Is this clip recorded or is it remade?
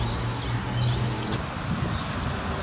recorded